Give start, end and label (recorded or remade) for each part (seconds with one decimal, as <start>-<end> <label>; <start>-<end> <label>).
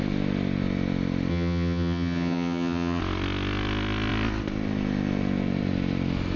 0.0-1.3 recorded; 1.3-3.0 remade; 3.0-6.4 recorded